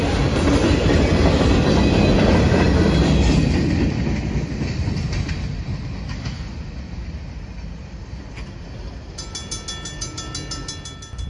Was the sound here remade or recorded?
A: recorded